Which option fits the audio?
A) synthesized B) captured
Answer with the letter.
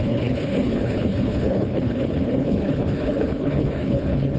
A